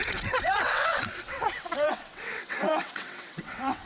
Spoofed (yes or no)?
yes